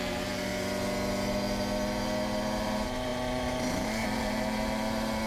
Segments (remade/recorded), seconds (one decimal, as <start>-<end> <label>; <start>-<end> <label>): 0.0-0.5 remade; 0.5-2.6 recorded; 2.6-5.3 remade